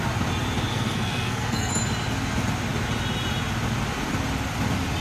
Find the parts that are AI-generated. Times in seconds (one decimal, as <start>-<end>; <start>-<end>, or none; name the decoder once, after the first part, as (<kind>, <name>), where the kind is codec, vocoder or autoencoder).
0.7-1.7 (codec, SNAC)